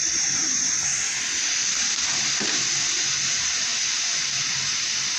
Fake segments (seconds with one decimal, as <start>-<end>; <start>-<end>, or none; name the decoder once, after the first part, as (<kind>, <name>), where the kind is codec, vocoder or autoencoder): 0.0-0.9 (vocoder, BigVGAN v2); 2.4-3.7; 4.2-5.2